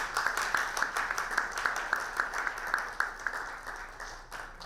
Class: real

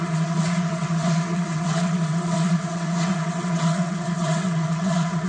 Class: fake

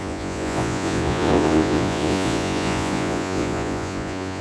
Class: fake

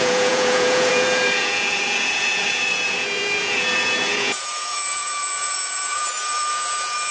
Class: fake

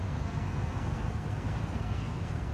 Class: fake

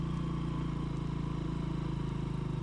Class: real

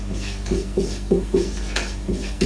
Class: fake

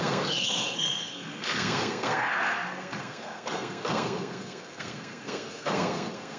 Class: fake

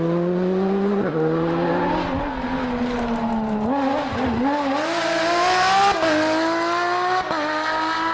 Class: real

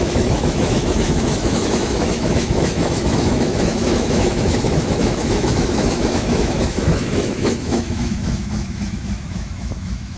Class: fake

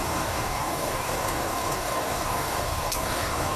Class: fake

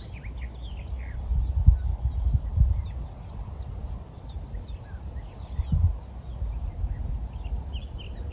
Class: real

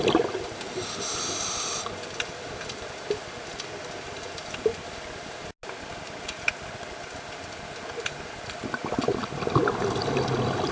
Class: real